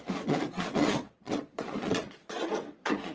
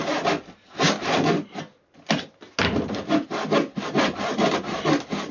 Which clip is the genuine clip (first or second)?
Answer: second